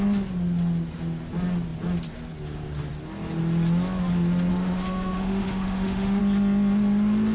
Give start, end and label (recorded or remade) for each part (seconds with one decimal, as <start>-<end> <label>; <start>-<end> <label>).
0.0-4.5 recorded; 4.5-6.2 remade; 6.2-7.3 recorded